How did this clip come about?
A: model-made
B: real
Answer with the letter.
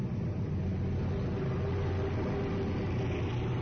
B